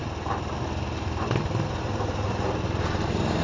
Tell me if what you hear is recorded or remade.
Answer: recorded